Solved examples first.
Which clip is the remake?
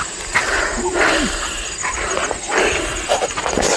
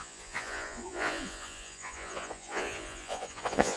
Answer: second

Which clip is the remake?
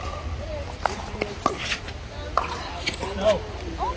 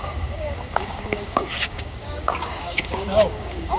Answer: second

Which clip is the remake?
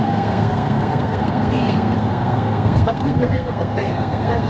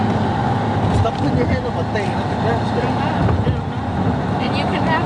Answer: first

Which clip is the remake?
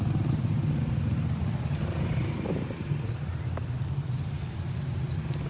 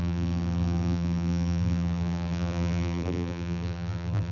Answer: second